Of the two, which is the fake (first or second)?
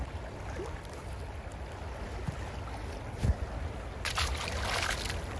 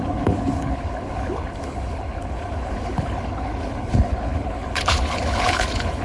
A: second